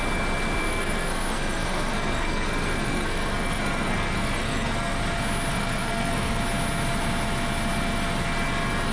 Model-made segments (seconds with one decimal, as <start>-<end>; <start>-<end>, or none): 0.6-5.0; 5.5-6.4